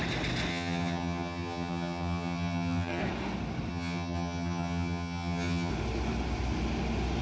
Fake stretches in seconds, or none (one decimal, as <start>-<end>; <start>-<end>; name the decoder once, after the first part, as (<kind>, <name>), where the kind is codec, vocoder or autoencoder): 0.5-3.0 (vocoder, HiFi-GAN); 3.7-5.7